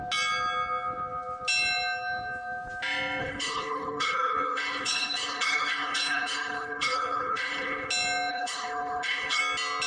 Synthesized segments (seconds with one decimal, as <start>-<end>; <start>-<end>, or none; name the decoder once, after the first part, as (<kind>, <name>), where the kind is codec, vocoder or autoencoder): 3.2-7.9 (codec, HILCodec); 8.3-9.4